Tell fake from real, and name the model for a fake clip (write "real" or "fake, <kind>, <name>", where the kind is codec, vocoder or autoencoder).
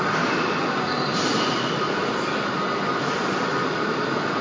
real